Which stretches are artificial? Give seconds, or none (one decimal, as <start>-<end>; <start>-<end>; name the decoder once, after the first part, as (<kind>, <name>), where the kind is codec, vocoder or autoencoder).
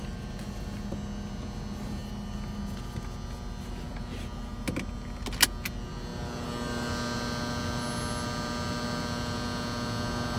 none